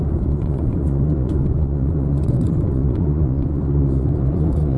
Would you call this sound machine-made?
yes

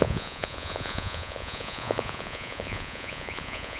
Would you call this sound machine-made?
yes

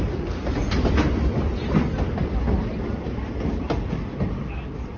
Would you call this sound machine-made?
no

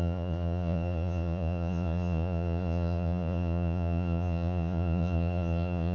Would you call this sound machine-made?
yes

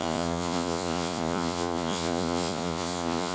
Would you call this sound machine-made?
yes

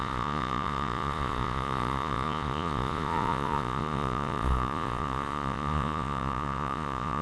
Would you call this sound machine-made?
yes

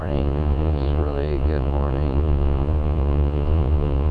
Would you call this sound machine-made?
yes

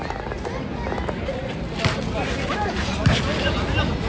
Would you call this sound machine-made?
no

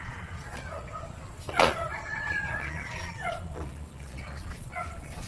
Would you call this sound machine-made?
yes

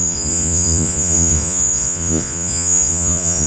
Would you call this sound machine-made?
yes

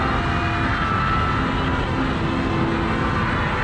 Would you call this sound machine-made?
no